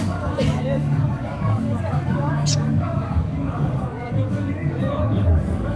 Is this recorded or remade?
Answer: remade